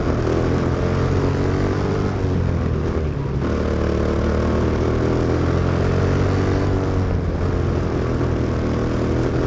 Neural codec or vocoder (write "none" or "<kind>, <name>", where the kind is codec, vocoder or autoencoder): none